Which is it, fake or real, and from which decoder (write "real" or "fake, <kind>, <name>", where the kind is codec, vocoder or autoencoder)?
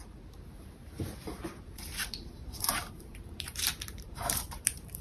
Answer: fake, vocoder, BigVGAN v2